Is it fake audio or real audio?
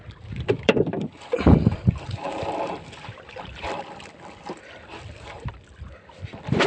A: fake